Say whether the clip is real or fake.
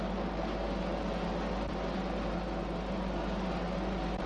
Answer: real